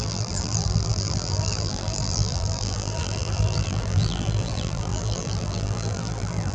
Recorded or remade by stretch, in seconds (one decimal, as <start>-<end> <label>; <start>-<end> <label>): 0.0-6.5 remade